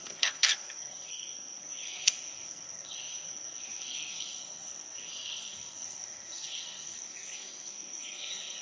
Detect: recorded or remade remade